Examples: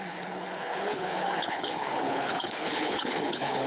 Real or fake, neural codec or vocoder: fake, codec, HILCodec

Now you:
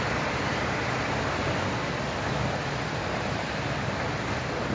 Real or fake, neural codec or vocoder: real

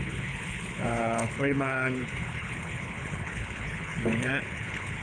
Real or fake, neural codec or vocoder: fake, codec, HILCodec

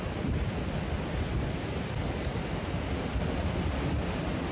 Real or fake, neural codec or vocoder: real